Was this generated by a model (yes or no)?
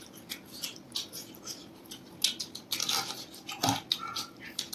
no